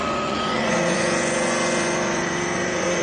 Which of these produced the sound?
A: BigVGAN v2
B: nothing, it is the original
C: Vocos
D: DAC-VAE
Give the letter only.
C